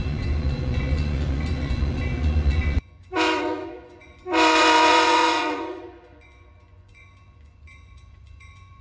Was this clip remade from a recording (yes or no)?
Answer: yes